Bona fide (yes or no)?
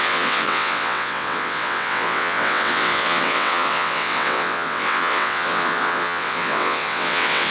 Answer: no